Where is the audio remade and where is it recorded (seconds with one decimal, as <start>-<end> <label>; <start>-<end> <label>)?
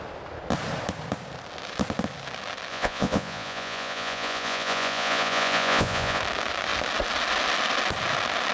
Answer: 0.0-2.7 recorded; 2.7-6.2 remade; 6.2-8.5 recorded